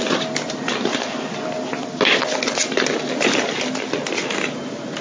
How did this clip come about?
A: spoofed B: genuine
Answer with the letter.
B